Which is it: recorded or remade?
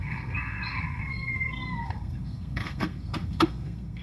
remade